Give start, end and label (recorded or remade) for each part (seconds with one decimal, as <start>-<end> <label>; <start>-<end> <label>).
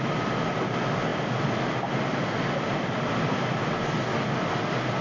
0.0-1.1 recorded; 1.1-3.6 remade; 3.6-5.0 recorded